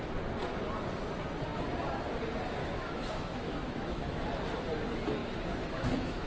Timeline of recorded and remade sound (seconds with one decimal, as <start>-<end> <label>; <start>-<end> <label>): 0.0-2.6 recorded; 2.6-4.3 remade; 4.3-5.2 recorded; 5.2-6.3 remade